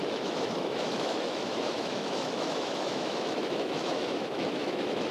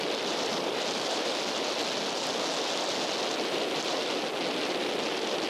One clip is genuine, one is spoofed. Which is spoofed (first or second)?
first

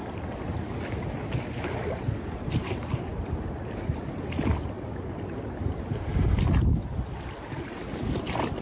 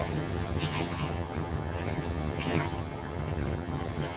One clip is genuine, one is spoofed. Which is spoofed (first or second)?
second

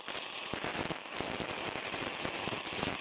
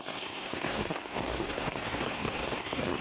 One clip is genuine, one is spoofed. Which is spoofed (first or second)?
second